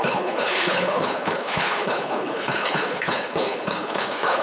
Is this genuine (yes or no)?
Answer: no